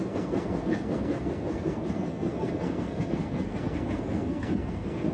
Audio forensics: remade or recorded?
remade